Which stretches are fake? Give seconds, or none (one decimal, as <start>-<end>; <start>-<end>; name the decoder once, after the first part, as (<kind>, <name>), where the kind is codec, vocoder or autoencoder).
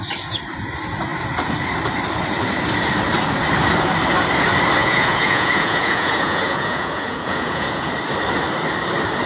4.8-7.9 (vocoder, Vocos)